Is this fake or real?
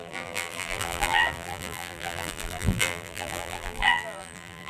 fake